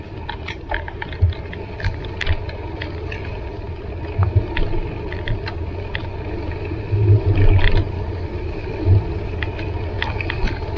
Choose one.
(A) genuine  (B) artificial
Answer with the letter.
A